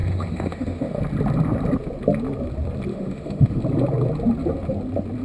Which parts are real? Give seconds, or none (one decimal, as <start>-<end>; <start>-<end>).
1.0-2.9; 3.6-5.2

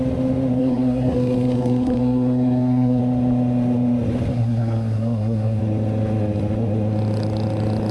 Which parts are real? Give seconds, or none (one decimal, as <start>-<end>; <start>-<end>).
0.0-0.6; 3.0-4.3; 5.6-7.9